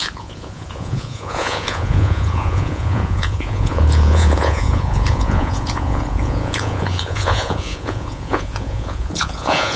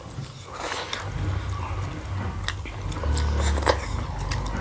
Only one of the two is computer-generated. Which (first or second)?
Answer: first